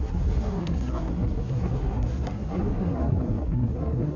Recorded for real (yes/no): no